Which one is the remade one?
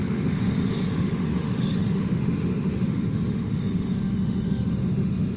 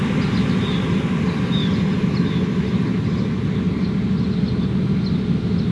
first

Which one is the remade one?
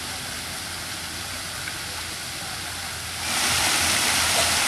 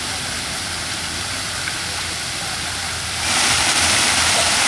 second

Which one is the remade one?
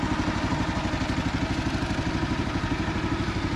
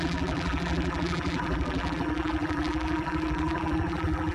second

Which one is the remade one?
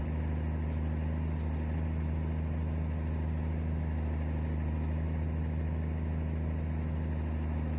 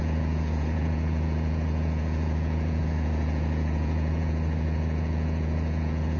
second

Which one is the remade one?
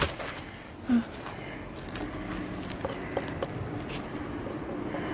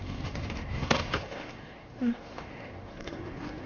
second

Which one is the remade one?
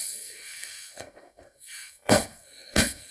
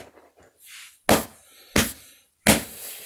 first